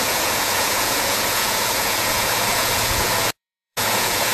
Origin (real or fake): fake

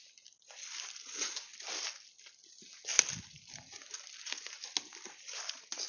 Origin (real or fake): real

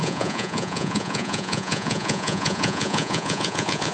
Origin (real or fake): fake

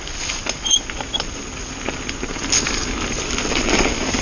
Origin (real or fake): real